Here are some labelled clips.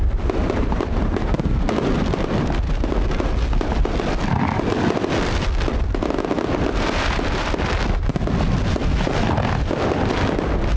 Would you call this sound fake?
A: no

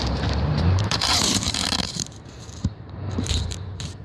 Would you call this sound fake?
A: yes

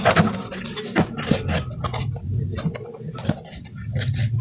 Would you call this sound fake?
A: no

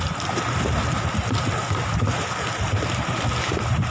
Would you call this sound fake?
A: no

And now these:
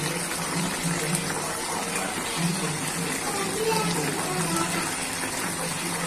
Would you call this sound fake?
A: no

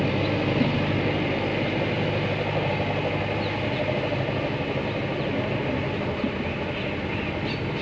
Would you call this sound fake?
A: no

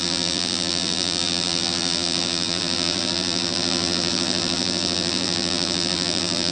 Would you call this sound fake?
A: yes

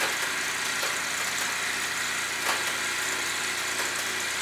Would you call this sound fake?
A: no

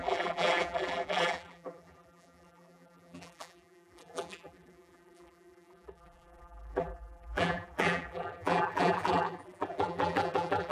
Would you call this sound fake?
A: yes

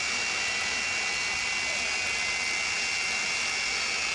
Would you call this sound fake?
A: no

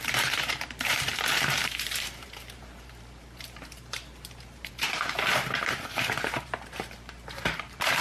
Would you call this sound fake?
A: yes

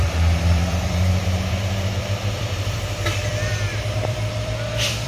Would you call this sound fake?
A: yes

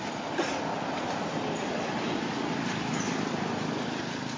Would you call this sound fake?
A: yes